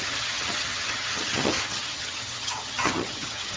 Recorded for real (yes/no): no